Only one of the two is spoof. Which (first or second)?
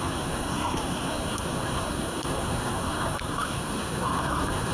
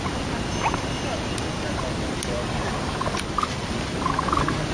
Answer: first